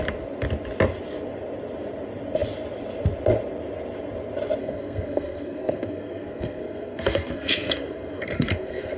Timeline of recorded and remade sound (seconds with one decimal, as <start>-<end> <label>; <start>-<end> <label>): 0.0-4.6 recorded; 4.6-9.0 remade